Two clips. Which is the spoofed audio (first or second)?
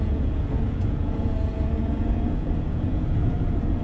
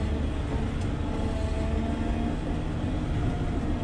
first